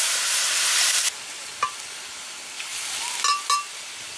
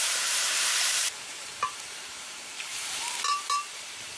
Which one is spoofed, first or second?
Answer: second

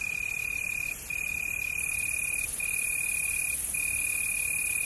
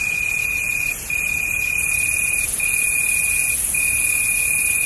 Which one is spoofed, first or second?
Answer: second